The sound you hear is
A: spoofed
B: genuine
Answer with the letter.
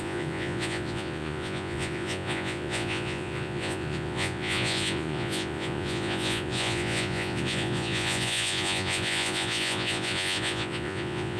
A